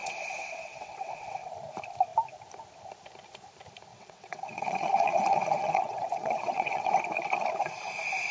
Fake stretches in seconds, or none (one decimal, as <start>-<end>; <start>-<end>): 0.0-1.5; 3.9-6.9